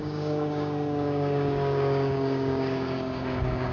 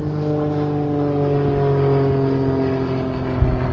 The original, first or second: second